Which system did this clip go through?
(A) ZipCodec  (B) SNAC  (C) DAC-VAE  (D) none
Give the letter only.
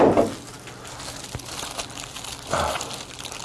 D